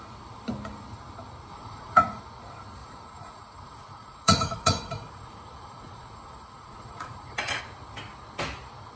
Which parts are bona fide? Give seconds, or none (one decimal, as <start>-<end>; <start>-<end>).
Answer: 0.0-1.5; 2.2-2.8; 7.6-9.0